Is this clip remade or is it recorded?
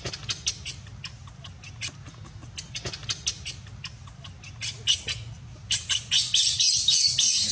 recorded